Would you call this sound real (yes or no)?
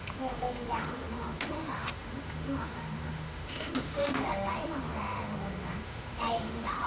no